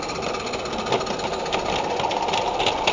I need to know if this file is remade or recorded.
recorded